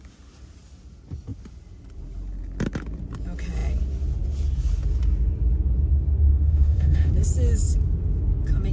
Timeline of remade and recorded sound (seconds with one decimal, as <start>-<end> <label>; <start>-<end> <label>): 0.0-6.3 recorded; 6.3-7.1 remade; 7.1-8.7 recorded